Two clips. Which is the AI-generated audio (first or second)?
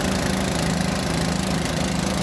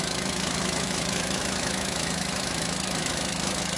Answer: second